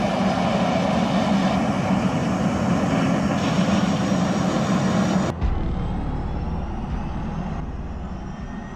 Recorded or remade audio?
recorded